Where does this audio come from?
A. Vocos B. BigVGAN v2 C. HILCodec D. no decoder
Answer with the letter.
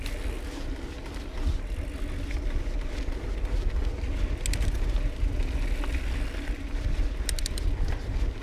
D